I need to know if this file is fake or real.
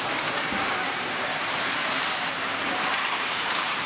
fake